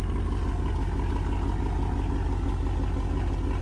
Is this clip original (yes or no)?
yes